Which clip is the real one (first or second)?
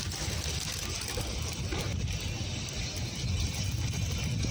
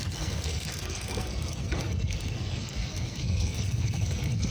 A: first